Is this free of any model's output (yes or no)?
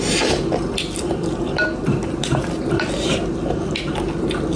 yes